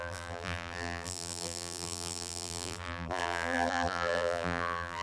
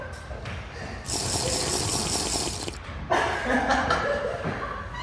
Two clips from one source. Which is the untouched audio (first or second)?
second